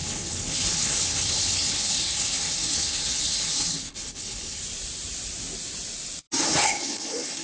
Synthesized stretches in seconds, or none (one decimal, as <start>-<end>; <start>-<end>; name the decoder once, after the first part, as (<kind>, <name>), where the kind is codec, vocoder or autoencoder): 0.0-4.6 (codec, HILCodec); 6.4-7.4